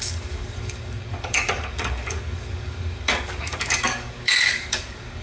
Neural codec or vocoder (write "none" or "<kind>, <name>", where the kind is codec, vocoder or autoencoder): codec, DAC